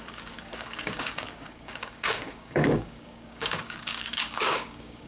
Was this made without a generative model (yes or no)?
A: no